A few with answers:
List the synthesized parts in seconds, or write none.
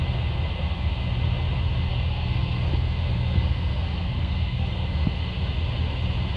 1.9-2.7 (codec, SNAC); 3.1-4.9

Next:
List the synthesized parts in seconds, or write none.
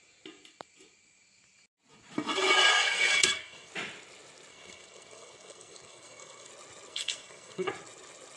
2.7-3.7 (codec, SNAC); 4.5-6.5; 6.9-7.7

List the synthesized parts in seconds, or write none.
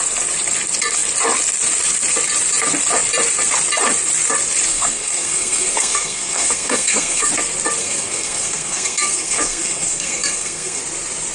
4.7-7.3 (codec, SNAC); 7.8-10.8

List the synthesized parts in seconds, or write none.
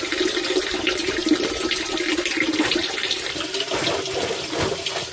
none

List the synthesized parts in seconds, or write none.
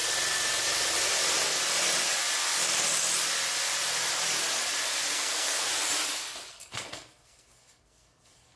5.1-5.7 (codec, SNAC); 6.5-8.6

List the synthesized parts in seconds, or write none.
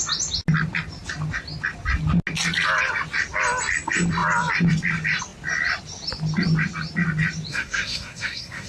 7.5-8.7 (codec, SNAC)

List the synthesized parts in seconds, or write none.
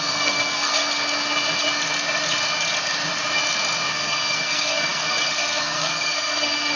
0.0-0.8 (codec, SNAC); 3.9-6.8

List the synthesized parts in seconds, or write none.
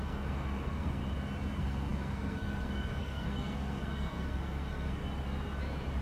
0.0-1.0 (codec, SNAC); 1.5-5.0